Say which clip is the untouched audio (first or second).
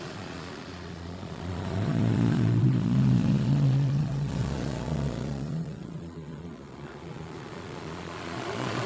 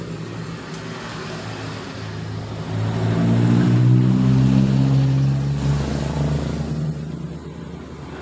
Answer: second